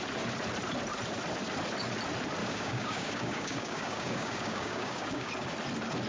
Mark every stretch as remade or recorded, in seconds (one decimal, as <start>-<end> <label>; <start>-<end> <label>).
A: 0.0-2.4 recorded; 2.4-5.3 remade; 5.3-6.1 recorded